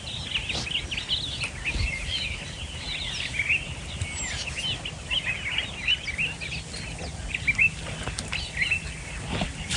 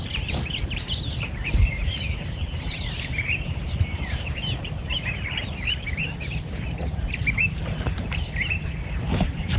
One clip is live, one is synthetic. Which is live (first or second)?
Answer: first